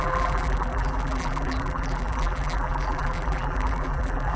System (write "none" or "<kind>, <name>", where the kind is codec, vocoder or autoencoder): vocoder, BigVGAN v2